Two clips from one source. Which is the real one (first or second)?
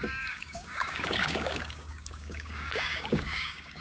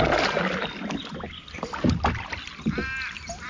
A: second